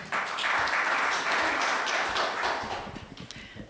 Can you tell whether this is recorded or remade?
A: recorded